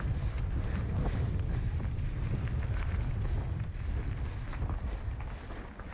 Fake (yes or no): no